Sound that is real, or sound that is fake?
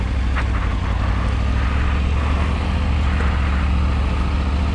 real